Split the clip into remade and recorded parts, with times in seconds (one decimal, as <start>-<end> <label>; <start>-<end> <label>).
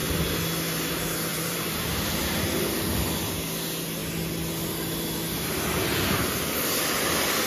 0.0-1.3 recorded; 1.3-2.4 remade; 2.4-7.5 recorded